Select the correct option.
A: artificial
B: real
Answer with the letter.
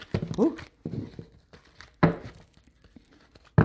B